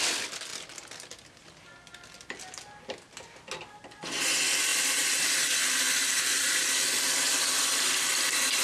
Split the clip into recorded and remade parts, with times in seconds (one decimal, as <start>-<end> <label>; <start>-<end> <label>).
0.0-8.6 recorded